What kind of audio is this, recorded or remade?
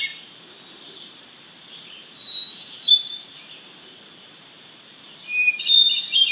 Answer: remade